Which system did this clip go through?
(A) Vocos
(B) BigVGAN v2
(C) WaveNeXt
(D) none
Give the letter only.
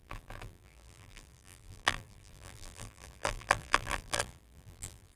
B